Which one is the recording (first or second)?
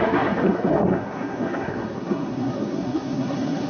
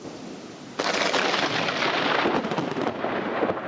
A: second